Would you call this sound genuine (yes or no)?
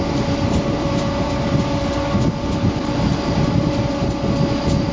yes